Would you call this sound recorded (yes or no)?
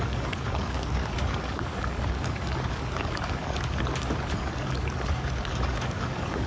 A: no